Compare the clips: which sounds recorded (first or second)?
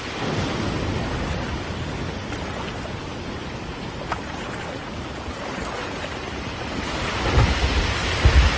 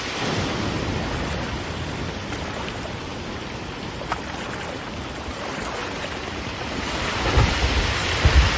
first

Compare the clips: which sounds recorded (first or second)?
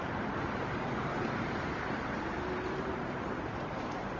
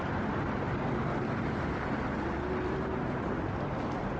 second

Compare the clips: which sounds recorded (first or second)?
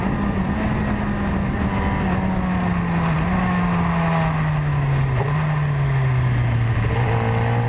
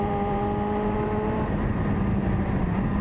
first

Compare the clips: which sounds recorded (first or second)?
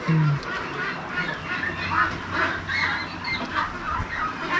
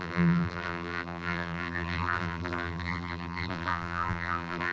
first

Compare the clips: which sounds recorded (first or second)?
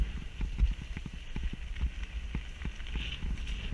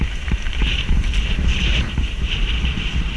first